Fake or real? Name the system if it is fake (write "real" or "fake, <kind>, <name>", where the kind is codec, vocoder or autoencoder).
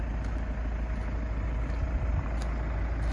real